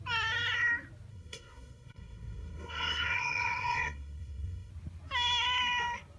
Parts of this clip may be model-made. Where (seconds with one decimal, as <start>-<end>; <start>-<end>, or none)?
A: 1.1-4.7